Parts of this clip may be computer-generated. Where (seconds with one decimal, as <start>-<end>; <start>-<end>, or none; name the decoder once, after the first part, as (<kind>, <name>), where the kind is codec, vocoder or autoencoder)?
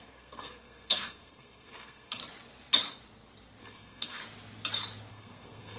0.0-2.2 (codec, SNAC); 3.6-4.2; 5.1-5.8